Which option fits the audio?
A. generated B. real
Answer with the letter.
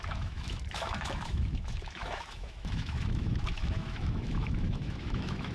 A